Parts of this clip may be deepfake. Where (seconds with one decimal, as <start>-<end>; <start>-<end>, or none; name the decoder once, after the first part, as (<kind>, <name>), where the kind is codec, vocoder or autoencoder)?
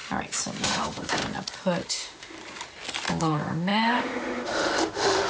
0.6-1.2 (autoencoder, DAC-VAE); 1.9-2.4; 3.2-5.3